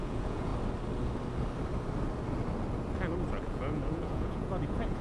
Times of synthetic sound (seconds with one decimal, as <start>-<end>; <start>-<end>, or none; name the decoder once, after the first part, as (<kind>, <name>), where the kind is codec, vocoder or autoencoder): 0.0-0.5 (vocoder, Vocos); 3.4-5.0